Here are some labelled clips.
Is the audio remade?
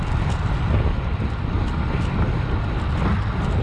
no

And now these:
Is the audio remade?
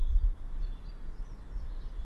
no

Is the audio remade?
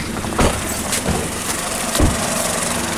yes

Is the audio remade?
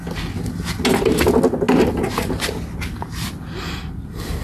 no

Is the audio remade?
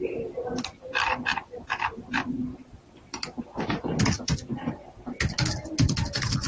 no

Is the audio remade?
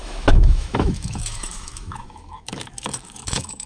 yes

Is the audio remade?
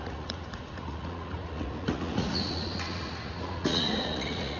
yes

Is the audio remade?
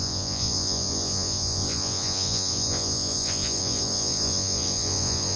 yes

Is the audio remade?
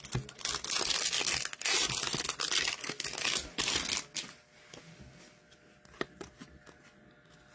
no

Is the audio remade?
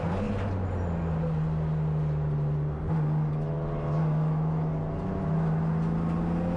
no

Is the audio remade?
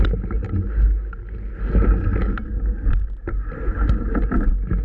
no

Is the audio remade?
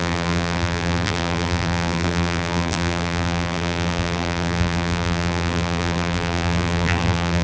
yes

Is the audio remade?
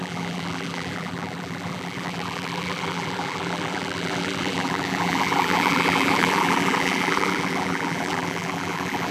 yes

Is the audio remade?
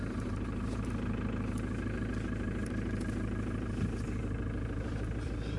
yes